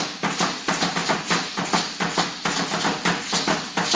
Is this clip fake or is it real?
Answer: real